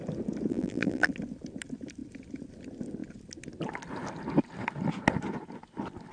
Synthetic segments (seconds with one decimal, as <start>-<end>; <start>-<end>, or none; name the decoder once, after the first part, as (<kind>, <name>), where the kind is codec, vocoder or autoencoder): 0.5-1.1 (vocoder, BigVGAN v2)